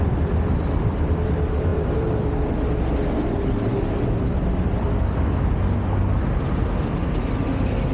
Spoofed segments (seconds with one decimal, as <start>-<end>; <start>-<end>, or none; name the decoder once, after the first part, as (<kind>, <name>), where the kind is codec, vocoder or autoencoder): 1.7-2.5 (vocoder, BigVGAN v2)